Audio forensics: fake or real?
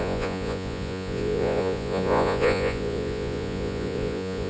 fake